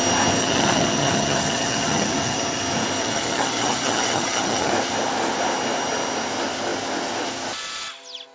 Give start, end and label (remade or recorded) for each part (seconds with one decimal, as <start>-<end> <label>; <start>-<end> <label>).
0.0-0.4 recorded; 0.4-2.6 remade; 2.6-3.0 recorded; 3.0-4.7 remade; 4.7-8.3 recorded